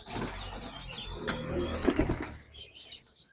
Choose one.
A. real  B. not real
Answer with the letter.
A